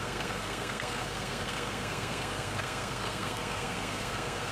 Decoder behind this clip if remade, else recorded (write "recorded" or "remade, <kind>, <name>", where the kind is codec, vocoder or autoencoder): remade, codec, SNAC